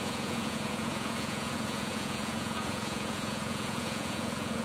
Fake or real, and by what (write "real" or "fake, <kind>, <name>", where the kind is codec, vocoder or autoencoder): fake, vocoder, Vocos